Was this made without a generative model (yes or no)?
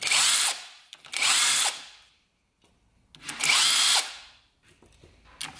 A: yes